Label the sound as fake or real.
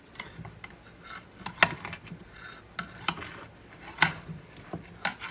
real